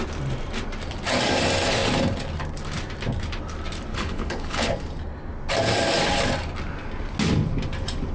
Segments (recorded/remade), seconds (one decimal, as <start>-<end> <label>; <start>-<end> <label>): 0.0-3.9 recorded; 3.9-4.7 remade; 4.7-8.1 recorded